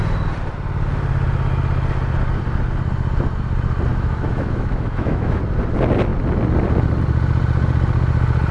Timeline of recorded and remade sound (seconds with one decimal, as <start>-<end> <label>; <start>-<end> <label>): 0.0-3.9 recorded; 3.9-5.4 remade; 5.4-8.5 recorded